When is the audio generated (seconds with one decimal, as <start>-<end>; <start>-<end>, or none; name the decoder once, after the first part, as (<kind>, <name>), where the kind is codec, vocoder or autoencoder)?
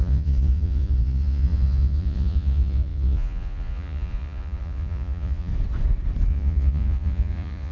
0.0-5.5 (vocoder, Vocos); 6.3-7.7